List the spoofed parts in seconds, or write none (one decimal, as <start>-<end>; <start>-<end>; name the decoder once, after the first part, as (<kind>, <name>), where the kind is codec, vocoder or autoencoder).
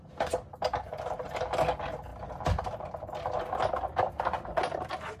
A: none